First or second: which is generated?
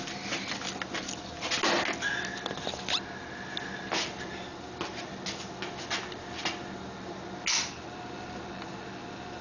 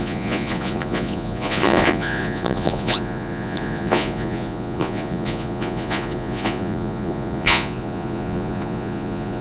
second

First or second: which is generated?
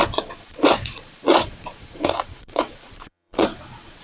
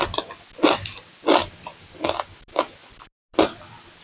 first